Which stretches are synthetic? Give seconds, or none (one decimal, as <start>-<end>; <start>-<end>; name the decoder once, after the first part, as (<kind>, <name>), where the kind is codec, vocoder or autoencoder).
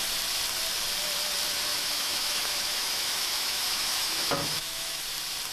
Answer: 1.7-5.0 (autoencoder, DAC-VAE)